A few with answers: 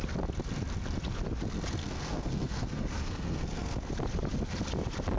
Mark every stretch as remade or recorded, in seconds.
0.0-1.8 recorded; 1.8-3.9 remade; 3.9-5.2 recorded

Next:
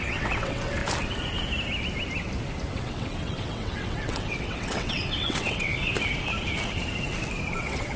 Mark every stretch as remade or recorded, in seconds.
0.0-0.8 remade; 0.8-2.7 recorded; 2.7-5.7 remade; 5.7-7.5 recorded; 7.5-8.0 remade

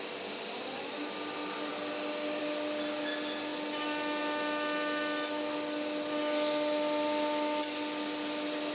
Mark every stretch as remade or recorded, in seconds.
0.0-8.7 recorded

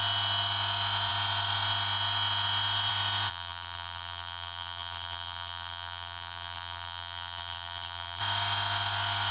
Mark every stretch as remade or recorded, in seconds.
0.0-3.3 recorded; 3.3-8.2 remade; 8.2-9.3 recorded

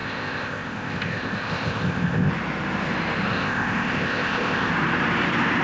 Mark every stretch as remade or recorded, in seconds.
0.0-2.3 remade; 2.3-3.3 recorded; 3.3-4.7 remade; 4.7-5.6 recorded

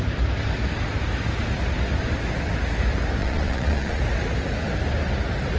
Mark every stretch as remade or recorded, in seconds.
0.0-3.2 recorded; 3.2-4.0 remade; 4.0-5.6 recorded